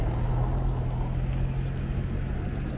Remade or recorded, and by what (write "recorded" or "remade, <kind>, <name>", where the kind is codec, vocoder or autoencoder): recorded